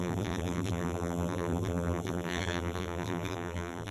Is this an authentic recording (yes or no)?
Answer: no